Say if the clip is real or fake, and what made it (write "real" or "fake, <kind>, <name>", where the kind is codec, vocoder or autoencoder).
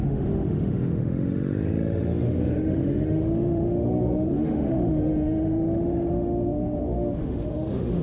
fake, autoencoder, DAC-VAE